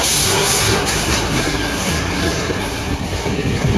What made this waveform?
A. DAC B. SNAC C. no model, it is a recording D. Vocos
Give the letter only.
B